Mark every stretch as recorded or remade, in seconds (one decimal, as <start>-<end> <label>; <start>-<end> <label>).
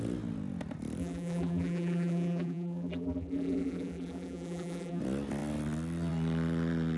0.0-1.0 recorded; 1.0-5.0 remade; 5.0-7.0 recorded